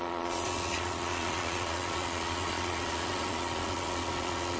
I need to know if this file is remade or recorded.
remade